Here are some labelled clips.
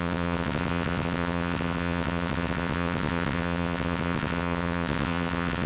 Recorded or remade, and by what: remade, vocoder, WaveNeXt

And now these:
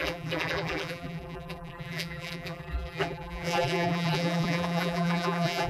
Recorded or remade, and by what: remade, vocoder, BigVGAN v2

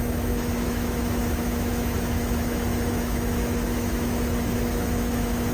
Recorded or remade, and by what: remade, autoencoder, DAC-VAE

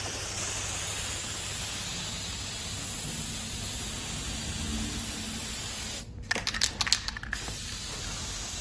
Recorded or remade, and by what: recorded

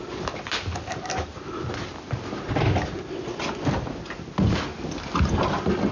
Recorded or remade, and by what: recorded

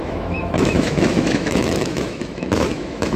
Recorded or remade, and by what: remade, autoencoder, DAC-VAE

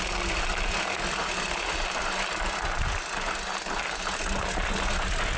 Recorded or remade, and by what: recorded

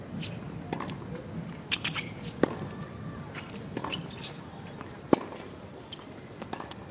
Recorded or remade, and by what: recorded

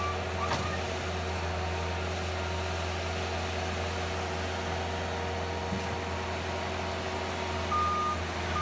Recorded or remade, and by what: recorded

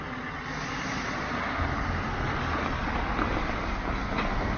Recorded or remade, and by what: recorded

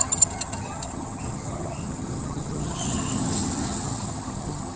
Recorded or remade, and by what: remade, vocoder, HiFi-GAN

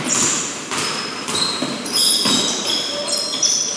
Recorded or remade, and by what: recorded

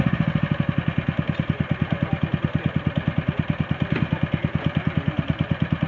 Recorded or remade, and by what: recorded